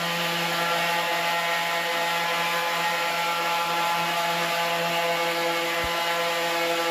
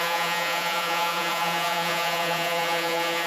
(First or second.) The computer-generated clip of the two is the second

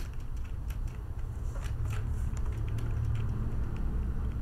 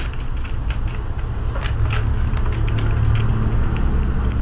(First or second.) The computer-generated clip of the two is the first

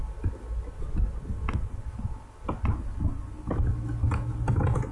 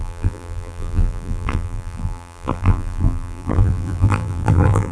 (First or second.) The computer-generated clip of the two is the second